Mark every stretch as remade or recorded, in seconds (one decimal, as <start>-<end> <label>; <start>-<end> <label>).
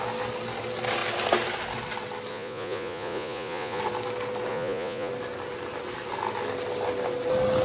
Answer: 0.0-2.3 recorded; 2.3-3.8 remade; 3.8-4.5 recorded; 4.5-5.1 remade; 5.1-7.6 recorded